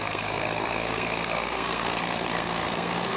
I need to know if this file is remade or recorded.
remade